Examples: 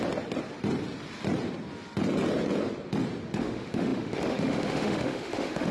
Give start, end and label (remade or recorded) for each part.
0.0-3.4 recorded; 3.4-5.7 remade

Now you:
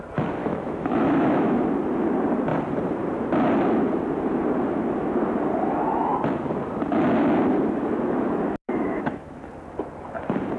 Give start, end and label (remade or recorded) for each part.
0.0-0.4 recorded; 0.4-1.6 remade; 1.6-8.6 recorded; 8.6-9.5 remade; 9.5-10.6 recorded

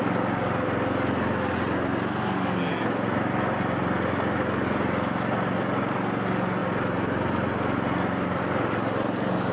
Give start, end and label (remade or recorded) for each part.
0.0-9.5 recorded